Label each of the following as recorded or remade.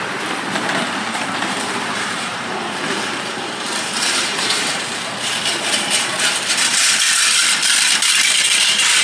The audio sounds remade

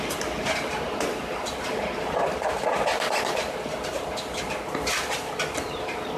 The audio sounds remade